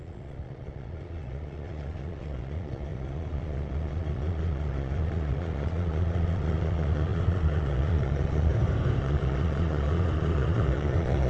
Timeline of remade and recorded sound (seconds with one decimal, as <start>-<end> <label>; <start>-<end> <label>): 0.0-8.5 remade; 8.5-9.0 recorded; 9.0-11.3 remade